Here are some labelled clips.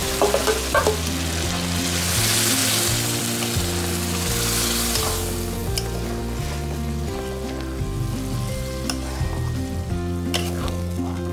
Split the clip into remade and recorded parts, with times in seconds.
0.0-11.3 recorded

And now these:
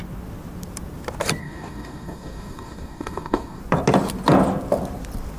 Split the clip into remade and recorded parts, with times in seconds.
0.0-1.4 recorded; 1.4-3.6 remade; 3.6-5.4 recorded

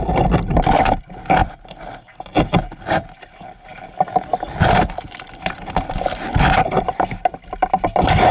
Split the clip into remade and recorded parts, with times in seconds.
0.0-8.3 recorded

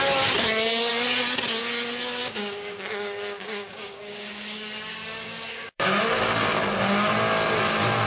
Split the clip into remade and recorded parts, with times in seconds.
0.0-2.2 recorded; 2.2-6.0 remade; 6.0-8.1 recorded

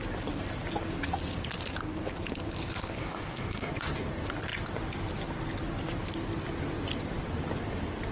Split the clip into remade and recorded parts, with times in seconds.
0.0-3.0 recorded; 3.0-3.7 remade; 3.7-8.1 recorded